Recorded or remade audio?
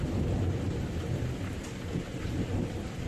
remade